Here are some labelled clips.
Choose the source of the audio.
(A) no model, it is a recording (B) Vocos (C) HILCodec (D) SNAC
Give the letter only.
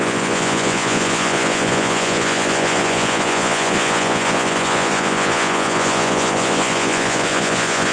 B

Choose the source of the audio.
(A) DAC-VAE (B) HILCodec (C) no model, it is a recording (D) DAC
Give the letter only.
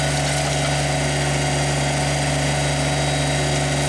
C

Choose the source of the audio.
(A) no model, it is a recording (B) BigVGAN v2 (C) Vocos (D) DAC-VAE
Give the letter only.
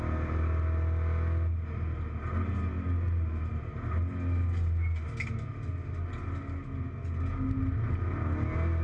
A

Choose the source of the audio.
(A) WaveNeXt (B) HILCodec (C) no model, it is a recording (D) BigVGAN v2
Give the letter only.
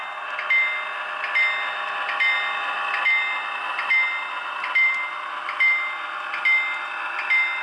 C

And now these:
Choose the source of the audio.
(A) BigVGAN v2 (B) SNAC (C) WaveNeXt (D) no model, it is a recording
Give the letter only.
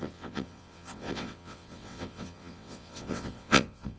C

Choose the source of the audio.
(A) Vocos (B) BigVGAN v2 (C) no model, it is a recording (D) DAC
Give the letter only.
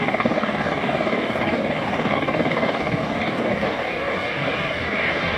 D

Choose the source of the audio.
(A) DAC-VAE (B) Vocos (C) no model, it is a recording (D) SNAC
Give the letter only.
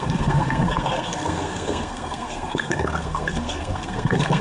D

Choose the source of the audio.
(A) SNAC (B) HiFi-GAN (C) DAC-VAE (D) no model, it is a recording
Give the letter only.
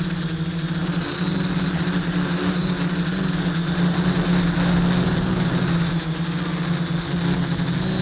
D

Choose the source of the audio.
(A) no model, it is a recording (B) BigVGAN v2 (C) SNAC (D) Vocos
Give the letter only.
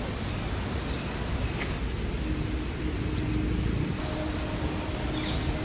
A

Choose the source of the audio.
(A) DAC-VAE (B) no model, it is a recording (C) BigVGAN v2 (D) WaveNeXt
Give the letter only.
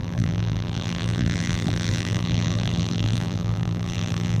C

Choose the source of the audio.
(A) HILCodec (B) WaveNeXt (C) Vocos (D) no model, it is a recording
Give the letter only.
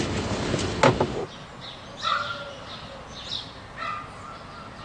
D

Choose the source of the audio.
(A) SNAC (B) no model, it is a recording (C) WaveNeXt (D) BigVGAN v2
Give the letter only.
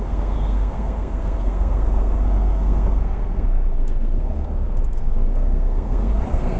A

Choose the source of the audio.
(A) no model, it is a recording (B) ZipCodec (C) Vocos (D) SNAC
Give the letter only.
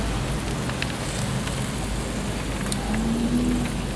A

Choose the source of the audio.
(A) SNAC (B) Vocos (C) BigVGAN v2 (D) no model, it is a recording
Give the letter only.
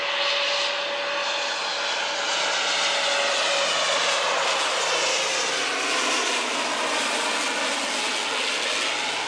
D